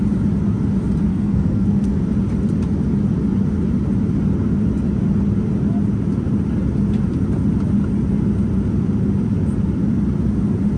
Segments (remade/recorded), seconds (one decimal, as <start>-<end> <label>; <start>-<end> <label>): 0.0-1.1 recorded; 1.1-2.0 remade; 2.0-10.8 recorded